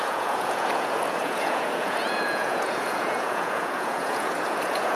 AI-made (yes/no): yes